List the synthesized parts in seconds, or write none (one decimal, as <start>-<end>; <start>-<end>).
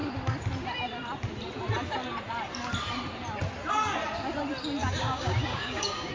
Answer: 4.8-6.1